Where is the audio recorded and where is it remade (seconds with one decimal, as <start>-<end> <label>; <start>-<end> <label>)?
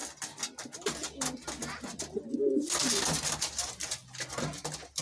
0.0-3.0 recorded; 3.0-4.0 remade; 4.0-5.0 recorded